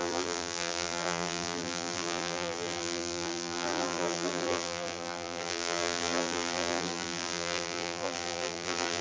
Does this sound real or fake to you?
fake